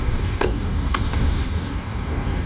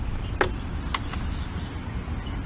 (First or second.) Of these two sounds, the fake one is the first